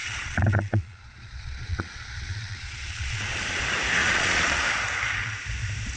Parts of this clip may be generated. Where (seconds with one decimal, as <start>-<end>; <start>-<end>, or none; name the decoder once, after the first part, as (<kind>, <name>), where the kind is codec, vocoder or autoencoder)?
0.0-3.6 (vocoder, Vocos); 4.0-4.6